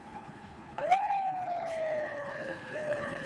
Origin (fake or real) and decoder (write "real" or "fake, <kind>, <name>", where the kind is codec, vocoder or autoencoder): fake, codec, HILCodec